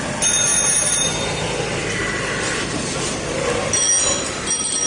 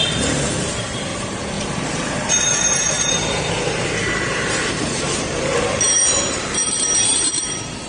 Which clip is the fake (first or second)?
second